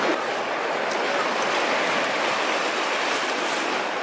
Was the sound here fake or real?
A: real